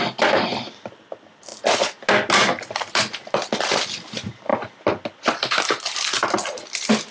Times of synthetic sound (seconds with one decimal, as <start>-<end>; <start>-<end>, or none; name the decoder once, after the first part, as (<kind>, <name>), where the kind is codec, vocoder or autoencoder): none